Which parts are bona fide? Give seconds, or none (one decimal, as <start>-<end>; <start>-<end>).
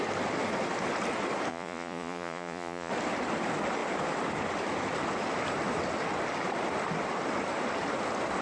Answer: 0.0-1.5; 2.9-8.4